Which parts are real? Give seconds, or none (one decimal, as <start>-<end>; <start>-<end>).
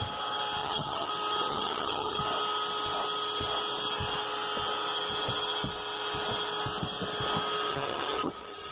0.0-0.6; 1.1-1.5; 2.2-7.7